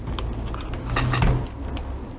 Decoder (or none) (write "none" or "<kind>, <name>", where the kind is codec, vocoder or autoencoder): none